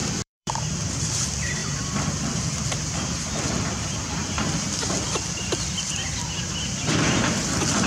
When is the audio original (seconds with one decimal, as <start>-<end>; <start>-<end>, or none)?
1.0-7.9

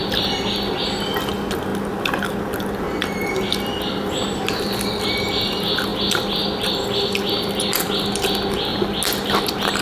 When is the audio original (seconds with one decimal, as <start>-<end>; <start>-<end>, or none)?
0.0-9.8

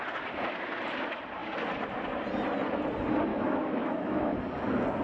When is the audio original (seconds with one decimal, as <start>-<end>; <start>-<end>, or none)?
0.0-3.3; 4.4-5.0

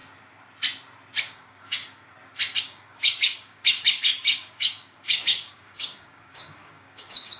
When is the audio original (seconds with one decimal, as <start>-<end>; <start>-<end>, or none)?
0.0-1.2; 1.8-2.6

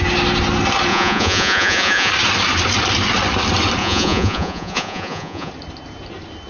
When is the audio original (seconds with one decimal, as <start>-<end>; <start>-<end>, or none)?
0.0-0.9; 2.1-3.8; 5.5-6.5

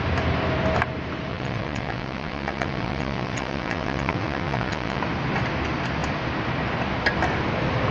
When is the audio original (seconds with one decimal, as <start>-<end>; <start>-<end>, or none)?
0.0-1.3; 5.0-7.9

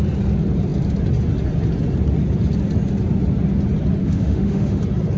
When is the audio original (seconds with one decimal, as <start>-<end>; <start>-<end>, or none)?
0.0-4.0; 4.8-5.2

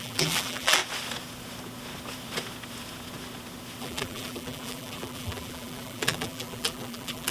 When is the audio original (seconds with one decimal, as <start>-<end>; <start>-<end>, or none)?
0.8-3.8